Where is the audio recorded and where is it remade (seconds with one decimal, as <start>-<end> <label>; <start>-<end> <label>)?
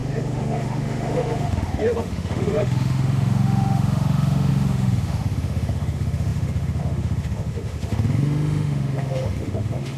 0.0-10.0 remade